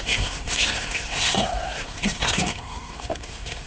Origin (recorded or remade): remade